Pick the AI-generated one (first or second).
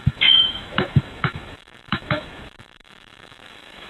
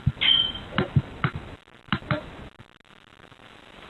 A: first